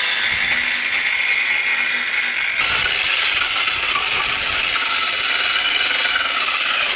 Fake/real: real